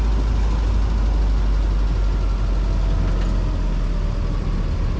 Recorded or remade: recorded